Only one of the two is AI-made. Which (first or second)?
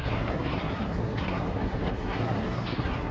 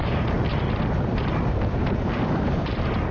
first